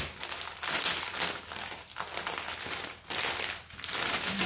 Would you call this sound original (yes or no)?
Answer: yes